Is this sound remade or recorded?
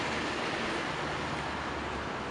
recorded